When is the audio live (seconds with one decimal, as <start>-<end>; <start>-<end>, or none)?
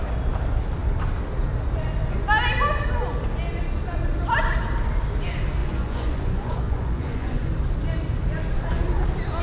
0.0-5.6; 7.5-9.4